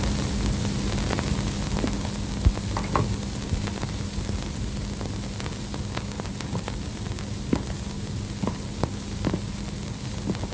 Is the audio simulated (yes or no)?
no